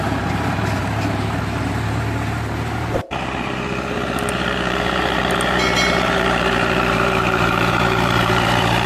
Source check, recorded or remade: remade